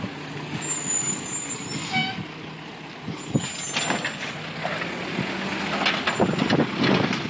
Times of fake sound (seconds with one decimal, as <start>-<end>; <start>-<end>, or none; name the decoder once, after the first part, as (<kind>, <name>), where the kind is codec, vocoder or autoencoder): none